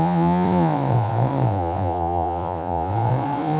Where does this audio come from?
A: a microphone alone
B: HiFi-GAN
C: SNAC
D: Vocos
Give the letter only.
D